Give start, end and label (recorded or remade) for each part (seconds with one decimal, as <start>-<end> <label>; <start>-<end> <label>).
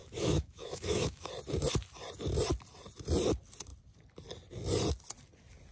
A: 0.0-1.3 remade; 1.3-5.7 recorded